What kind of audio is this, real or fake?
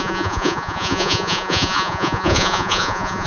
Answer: fake